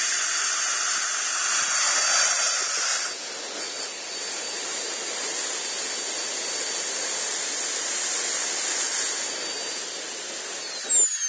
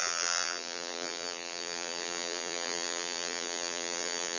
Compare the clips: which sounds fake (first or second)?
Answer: second